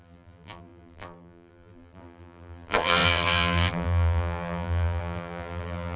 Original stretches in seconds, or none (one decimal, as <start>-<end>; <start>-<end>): none